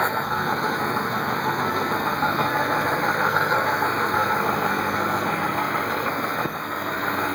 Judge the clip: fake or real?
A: fake